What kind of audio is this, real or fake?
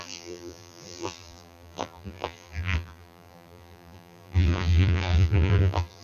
fake